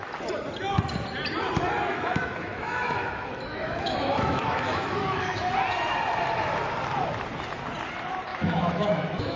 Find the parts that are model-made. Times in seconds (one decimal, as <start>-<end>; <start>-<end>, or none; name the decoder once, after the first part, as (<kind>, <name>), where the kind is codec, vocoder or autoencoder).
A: 1.9-5.5 (autoencoder, DAC-VAE); 8.3-9.4